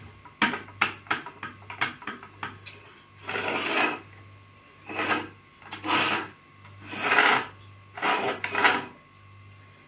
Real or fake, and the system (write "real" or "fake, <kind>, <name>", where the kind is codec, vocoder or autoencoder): real